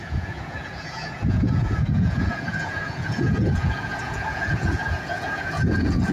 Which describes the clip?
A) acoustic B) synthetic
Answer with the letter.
B